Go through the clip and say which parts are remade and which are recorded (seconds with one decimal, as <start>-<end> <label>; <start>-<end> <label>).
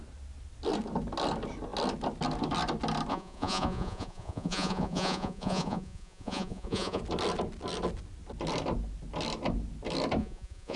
0.0-3.1 recorded; 3.1-7.0 remade; 7.0-10.2 recorded; 10.2-10.8 remade